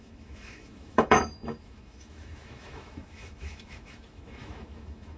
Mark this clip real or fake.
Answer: fake